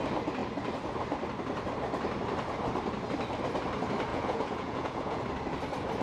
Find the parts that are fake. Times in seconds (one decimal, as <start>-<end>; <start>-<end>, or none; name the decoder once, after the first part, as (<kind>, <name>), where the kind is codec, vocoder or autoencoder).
4.1-5.2 (vocoder, Vocos)